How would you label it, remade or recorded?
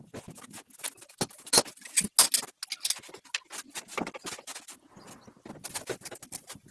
recorded